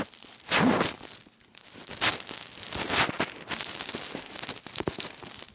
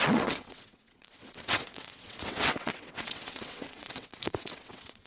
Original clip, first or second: first